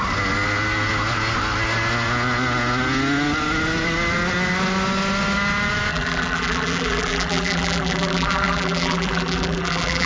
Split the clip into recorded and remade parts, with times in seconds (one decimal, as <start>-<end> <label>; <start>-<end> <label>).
0.0-5.9 recorded; 5.9-10.1 remade